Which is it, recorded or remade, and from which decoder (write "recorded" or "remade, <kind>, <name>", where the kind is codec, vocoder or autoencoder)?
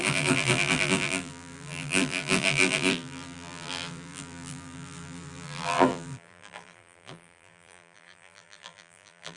remade, vocoder, BigVGAN v2